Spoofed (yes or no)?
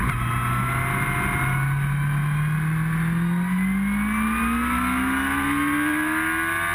no